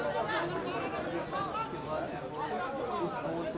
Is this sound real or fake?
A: real